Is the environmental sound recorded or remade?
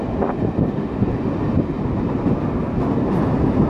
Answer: recorded